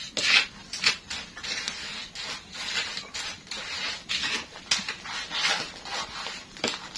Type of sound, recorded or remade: recorded